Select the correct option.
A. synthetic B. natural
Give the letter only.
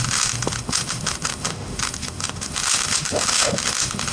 A